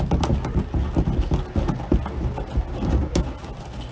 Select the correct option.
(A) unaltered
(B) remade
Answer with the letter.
A